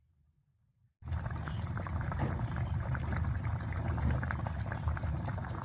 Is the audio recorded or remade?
remade